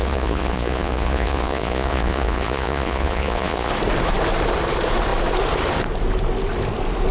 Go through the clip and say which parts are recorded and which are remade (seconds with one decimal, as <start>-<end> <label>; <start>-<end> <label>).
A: 0.0-3.7 remade; 3.7-7.1 recorded